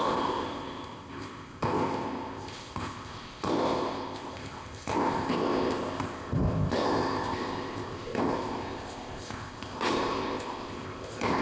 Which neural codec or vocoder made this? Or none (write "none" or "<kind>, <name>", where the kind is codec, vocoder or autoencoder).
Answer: codec, ZipCodec